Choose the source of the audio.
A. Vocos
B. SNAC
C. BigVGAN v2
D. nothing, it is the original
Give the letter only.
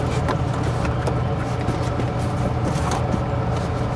D